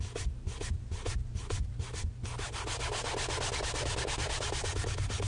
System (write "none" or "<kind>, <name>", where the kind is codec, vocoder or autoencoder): none